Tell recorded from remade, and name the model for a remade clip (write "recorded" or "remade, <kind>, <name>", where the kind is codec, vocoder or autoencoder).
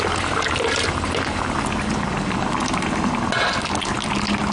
recorded